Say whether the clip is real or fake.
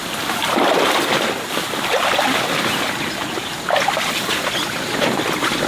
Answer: real